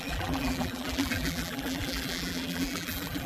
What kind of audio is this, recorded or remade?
remade